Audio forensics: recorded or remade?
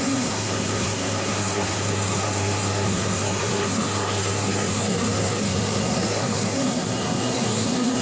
remade